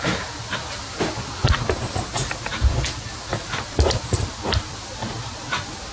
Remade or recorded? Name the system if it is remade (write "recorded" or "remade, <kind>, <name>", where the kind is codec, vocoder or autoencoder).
recorded